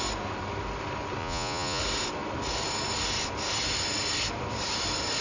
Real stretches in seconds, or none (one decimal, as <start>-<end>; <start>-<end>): 0.0-1.2; 1.8-5.2